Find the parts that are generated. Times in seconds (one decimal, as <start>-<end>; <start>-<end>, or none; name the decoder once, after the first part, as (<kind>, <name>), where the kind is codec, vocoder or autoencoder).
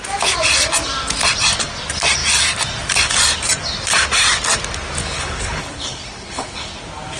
5.0-6.7 (codec, HILCodec)